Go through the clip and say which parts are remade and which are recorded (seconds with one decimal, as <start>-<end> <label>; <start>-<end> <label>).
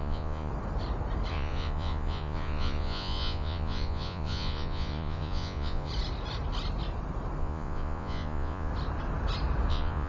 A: 0.0-0.5 remade; 0.5-1.3 recorded; 1.3-5.9 remade; 5.9-7.4 recorded; 7.4-8.7 remade; 8.7-9.7 recorded; 9.7-10.1 remade